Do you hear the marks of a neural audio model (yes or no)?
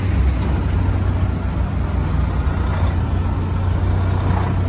no